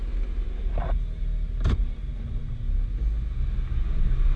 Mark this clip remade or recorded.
recorded